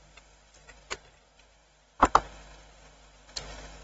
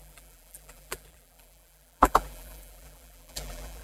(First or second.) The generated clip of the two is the second